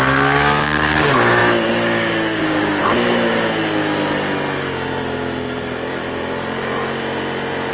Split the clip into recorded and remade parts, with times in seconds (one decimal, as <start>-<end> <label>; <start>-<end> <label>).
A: 0.0-2.8 remade; 2.8-7.7 recorded